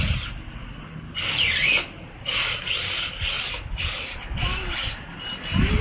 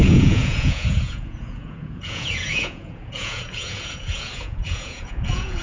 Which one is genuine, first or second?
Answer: first